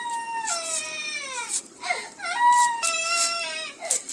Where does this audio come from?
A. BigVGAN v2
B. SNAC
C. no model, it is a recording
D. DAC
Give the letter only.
C